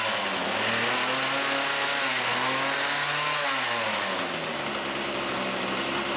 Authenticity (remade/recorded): recorded